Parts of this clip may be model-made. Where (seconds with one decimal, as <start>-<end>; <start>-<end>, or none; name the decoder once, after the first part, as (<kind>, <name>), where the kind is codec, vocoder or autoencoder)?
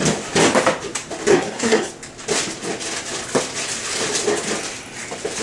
1.3-1.9 (codec, SNAC)